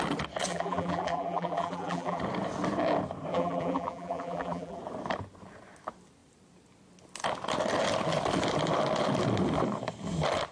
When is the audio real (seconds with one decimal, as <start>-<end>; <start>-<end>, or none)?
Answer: 0.0-0.5; 2.2-3.3; 4.8-10.5